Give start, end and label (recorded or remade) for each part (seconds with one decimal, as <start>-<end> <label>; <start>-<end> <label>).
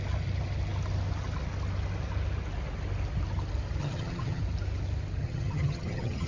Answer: 0.0-3.8 recorded; 3.8-4.4 remade; 4.4-5.2 recorded; 5.2-6.3 remade